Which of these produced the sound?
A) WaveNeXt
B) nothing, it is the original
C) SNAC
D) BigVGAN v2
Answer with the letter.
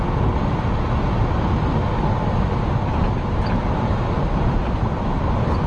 B